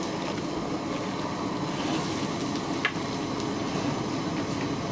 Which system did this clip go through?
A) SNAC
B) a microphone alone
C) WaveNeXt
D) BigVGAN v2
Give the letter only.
B